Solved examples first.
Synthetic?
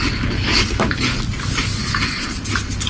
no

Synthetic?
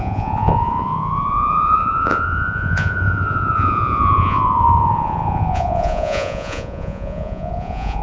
yes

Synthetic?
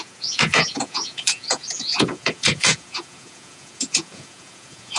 yes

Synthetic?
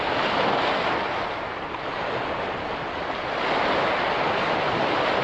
no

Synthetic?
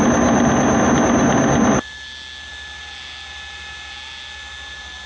no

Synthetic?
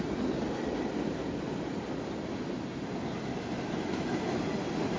no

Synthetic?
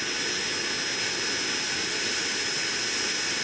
no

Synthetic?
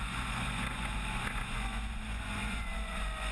yes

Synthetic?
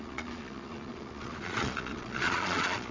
yes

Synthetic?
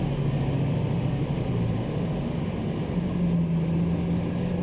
no